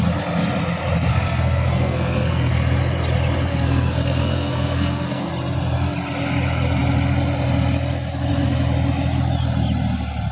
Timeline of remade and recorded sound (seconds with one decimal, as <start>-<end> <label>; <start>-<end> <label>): 0.0-1.1 recorded; 1.1-2.5 remade; 2.5-3.5 recorded; 3.5-5.3 remade; 5.3-10.3 recorded